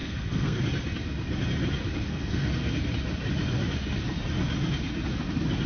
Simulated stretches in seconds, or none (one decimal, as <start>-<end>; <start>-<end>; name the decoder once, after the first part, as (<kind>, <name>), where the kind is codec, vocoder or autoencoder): 0.0-0.6 (codec, SNAC); 2.1-2.8